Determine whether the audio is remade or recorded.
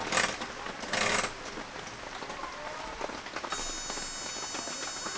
recorded